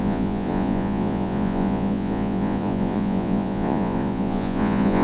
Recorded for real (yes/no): no